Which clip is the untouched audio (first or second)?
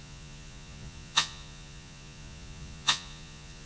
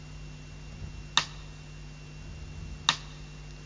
second